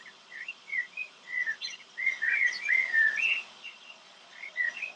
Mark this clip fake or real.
fake